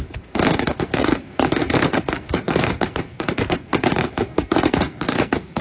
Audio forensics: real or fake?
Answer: fake